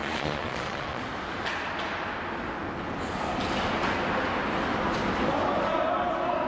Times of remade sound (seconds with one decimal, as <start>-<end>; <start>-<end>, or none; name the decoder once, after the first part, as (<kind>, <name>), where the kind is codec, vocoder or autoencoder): 0.0-1.0 (vocoder, Vocos)